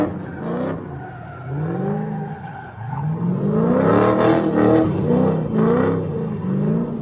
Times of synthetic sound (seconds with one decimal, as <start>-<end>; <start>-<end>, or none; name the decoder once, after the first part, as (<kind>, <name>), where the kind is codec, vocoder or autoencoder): 2.3-2.9 (codec, HILCodec)